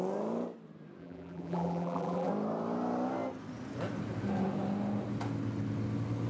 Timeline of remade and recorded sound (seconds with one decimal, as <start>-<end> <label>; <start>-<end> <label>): 0.0-1.0 recorded; 1.0-2.3 remade; 2.3-6.3 recorded